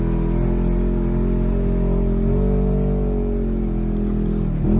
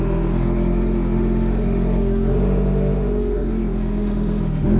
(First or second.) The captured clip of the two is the first